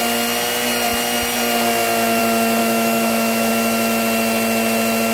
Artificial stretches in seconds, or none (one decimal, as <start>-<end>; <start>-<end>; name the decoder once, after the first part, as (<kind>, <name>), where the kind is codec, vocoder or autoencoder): 2.6-3.5 (autoencoder, DAC-VAE)